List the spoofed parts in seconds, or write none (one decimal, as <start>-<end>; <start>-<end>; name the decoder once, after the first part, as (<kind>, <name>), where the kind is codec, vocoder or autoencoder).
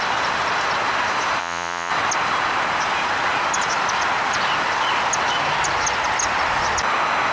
1.4-1.9 (vocoder, Vocos)